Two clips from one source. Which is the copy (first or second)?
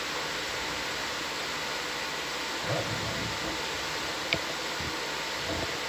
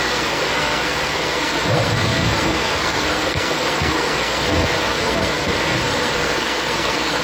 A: second